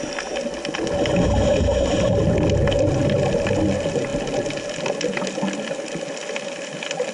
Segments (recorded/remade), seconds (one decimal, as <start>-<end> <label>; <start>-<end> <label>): 0.0-7.1 recorded